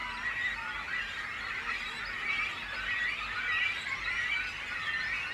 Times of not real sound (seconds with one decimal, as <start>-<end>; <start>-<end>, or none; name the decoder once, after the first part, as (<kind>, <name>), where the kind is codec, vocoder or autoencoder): none